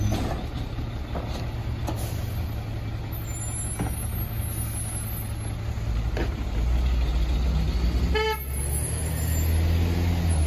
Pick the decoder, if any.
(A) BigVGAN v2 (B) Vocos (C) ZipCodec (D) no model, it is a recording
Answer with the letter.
D